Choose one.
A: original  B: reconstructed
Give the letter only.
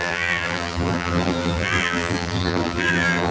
B